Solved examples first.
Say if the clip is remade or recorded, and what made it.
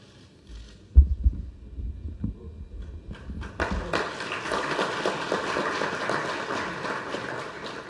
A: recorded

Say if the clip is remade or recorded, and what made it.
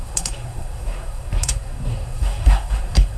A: remade, codec, SNAC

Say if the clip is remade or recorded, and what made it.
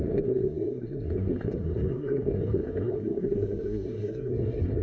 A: remade, codec, SNAC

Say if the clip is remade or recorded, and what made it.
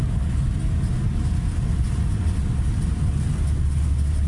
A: recorded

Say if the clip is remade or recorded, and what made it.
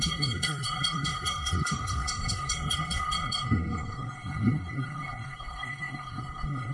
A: remade, codec, SNAC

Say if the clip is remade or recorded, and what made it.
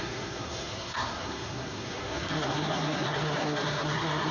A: remade, codec, SNAC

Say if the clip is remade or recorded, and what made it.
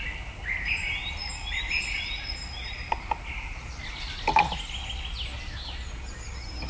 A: recorded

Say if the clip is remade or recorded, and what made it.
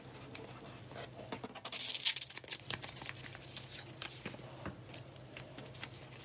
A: recorded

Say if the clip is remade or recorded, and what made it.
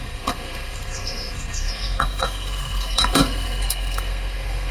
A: remade, codec, SNAC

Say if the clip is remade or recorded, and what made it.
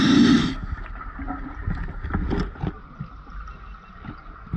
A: recorded